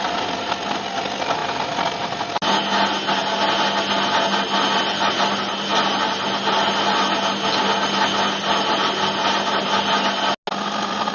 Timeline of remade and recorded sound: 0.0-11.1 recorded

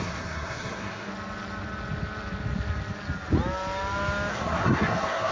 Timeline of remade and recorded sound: 0.0-1.1 remade; 1.1-4.3 recorded; 4.3-5.3 remade

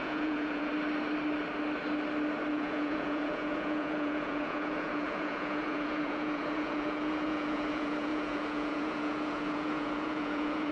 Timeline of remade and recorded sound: 0.0-0.7 remade; 0.7-2.5 recorded; 2.5-10.7 remade